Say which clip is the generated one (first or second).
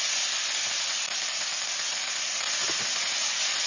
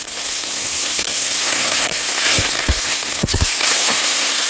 second